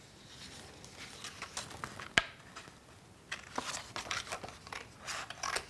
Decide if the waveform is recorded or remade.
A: recorded